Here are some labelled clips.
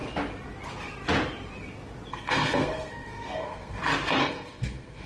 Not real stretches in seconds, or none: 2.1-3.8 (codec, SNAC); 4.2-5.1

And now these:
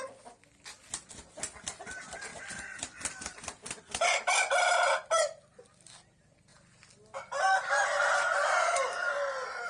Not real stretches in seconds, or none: none

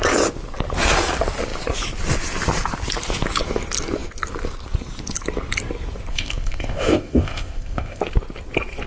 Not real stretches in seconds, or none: 6.1-8.0 (codec, ZipCodec)